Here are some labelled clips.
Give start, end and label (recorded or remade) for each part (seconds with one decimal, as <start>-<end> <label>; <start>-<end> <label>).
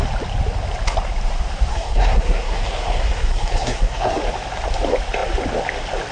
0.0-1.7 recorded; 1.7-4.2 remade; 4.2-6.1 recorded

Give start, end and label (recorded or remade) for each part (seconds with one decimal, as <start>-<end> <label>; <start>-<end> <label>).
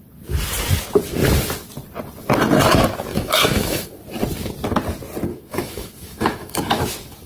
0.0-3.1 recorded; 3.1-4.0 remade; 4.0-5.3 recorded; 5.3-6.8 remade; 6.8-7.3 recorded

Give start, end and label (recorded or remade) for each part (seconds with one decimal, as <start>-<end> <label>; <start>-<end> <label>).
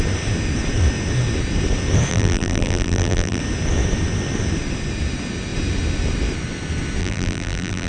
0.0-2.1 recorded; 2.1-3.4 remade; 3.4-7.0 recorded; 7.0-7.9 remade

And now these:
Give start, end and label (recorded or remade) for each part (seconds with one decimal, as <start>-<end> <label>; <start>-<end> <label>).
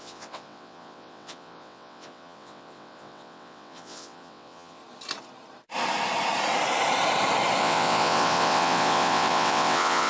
0.0-4.8 remade; 4.8-7.6 recorded; 7.6-10.1 remade